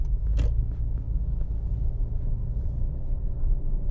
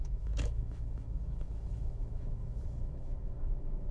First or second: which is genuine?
first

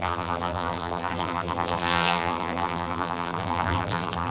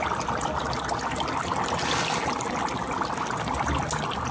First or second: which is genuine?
second